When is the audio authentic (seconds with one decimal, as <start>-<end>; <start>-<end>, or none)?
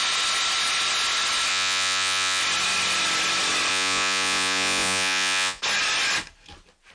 0.0-1.5; 2.4-3.7; 5.6-6.9